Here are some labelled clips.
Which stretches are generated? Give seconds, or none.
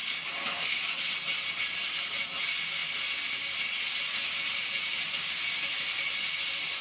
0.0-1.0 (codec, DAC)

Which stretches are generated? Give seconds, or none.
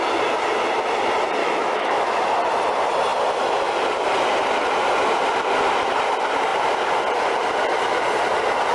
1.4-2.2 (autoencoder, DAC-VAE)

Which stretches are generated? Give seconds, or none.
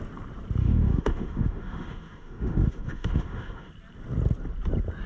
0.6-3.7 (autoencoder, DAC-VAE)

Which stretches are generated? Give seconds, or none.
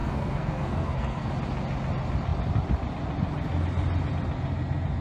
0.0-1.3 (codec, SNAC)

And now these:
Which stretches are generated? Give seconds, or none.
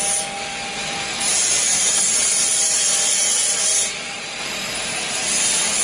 none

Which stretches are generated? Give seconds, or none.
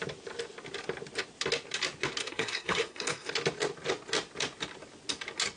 2.2-3.3 (codec, SNAC)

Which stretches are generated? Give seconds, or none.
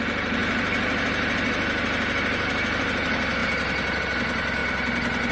none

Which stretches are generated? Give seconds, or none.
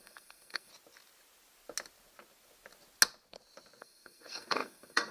0.0-0.7 (codec, SNAC); 3.8-5.1